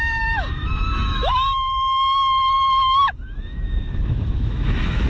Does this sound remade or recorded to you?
remade